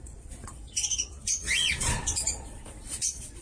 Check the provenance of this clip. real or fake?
fake